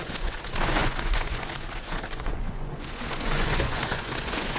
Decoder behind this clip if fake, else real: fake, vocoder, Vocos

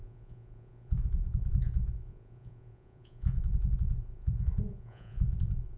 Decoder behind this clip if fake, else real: fake, vocoder, Vocos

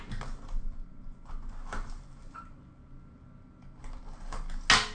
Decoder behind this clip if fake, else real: real